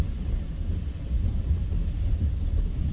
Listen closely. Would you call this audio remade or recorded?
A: recorded